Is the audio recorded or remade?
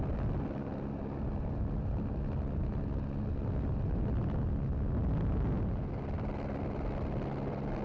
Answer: recorded